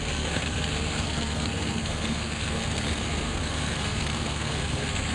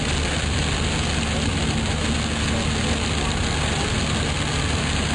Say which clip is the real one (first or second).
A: second